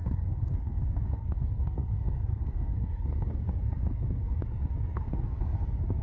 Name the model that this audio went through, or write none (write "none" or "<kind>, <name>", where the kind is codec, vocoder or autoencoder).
codec, SNAC